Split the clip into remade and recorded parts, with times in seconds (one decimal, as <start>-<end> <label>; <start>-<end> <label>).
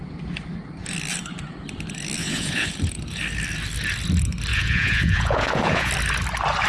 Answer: 0.0-2.2 recorded; 2.2-2.7 remade; 2.7-4.5 recorded; 4.5-5.9 remade; 5.9-6.7 recorded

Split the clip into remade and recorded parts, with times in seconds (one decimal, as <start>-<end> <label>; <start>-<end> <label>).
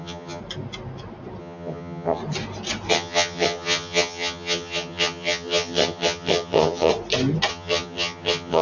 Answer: 0.0-0.4 remade; 0.4-1.4 recorded; 1.4-2.2 remade; 2.2-2.9 recorded; 2.9-6.9 remade; 6.9-7.5 recorded; 7.5-8.6 remade